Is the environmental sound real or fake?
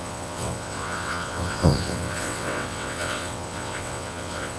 fake